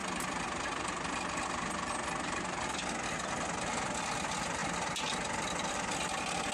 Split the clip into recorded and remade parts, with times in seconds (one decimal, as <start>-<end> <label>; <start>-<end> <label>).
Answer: 0.0-6.5 recorded